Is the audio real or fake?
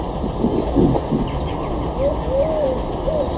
real